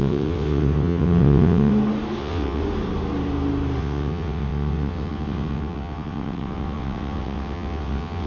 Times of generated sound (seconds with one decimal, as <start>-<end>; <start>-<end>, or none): 0.0-1.7; 2.2-2.6; 3.8-8.3